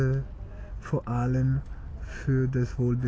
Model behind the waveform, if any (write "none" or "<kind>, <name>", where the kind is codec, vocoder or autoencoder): none